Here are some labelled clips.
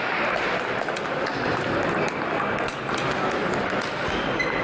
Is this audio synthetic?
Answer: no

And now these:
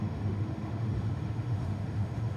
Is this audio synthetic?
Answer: yes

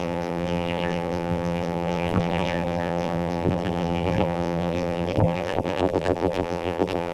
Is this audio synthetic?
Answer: yes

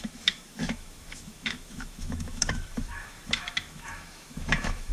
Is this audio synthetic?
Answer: yes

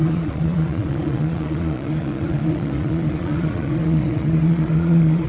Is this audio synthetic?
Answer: yes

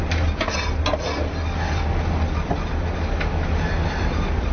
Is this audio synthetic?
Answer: no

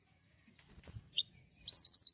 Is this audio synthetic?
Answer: yes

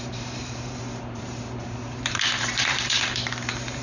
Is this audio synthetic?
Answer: yes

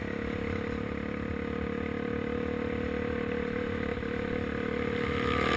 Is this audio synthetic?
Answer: no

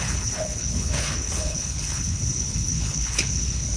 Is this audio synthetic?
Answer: yes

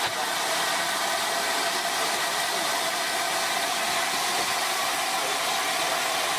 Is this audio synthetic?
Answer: no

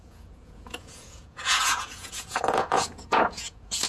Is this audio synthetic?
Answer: yes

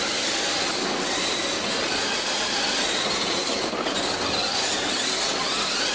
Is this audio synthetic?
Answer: no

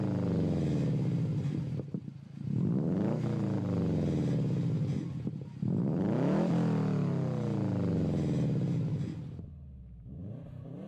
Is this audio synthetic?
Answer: no